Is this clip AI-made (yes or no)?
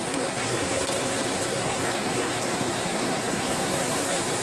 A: yes